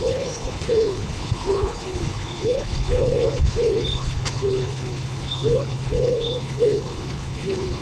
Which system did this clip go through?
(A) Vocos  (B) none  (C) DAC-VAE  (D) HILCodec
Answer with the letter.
D